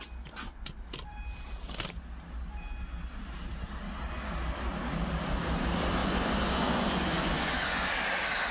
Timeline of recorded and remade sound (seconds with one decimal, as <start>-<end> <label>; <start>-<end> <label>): 0.0-6.0 recorded; 6.0-7.9 remade; 7.9-8.5 recorded